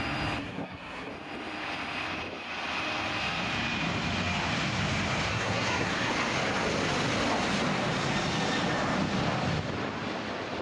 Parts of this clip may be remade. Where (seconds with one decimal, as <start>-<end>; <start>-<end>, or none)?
0.4-1.1; 5.3-6.1